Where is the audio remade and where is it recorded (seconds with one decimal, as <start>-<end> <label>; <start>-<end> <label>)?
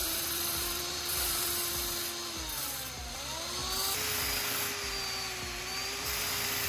0.0-1.7 remade; 1.7-5.8 recorded; 5.8-6.3 remade; 6.3-6.7 recorded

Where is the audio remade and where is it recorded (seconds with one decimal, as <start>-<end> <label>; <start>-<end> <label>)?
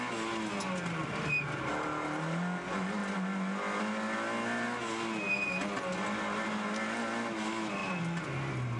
0.0-1.0 recorded; 1.0-1.7 remade; 1.7-8.8 recorded